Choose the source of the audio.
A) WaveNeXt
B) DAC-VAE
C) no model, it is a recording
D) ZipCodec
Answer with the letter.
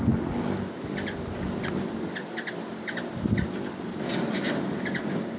C